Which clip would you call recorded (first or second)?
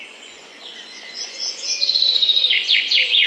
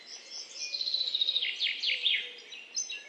second